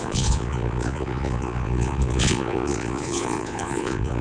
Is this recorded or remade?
remade